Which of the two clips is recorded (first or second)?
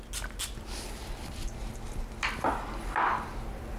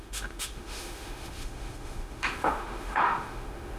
first